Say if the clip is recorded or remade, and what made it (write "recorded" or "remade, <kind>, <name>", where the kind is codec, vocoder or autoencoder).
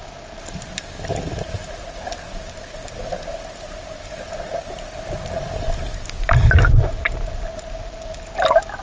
recorded